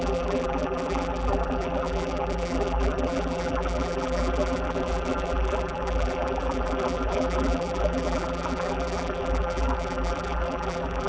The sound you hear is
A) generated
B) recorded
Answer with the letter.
A